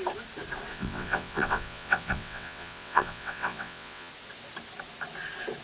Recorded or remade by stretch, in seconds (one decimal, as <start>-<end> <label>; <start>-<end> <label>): 0.0-0.7 recorded; 0.7-4.1 remade; 4.1-5.6 recorded